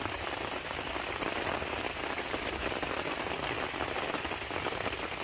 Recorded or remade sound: recorded